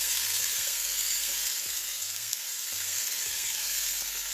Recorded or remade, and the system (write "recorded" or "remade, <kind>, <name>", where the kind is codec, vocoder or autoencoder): remade, codec, SNAC